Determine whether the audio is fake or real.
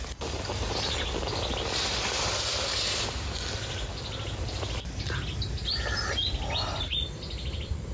real